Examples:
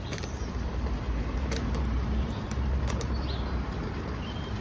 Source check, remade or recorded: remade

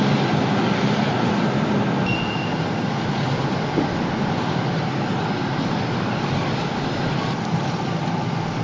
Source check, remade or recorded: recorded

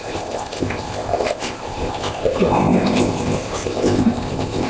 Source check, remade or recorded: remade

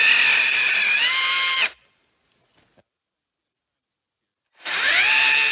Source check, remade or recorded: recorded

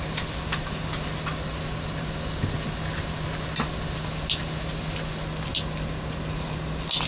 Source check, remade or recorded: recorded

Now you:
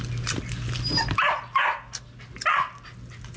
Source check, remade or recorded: recorded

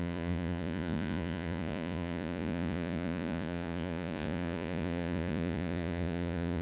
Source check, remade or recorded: remade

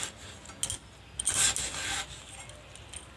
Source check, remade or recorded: recorded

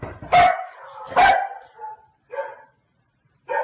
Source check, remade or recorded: recorded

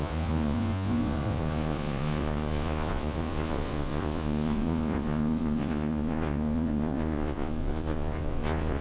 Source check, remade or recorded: remade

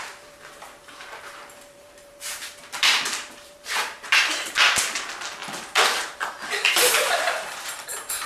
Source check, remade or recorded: remade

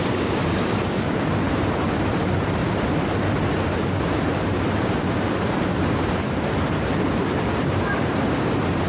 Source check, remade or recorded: remade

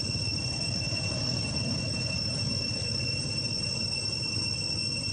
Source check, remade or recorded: recorded